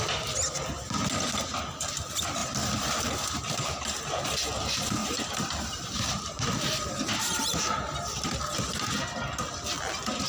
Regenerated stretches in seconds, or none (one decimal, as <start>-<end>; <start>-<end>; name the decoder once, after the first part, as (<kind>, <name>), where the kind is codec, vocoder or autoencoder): 2.4-4.0 (vocoder, BigVGAN v2); 5.0-8.4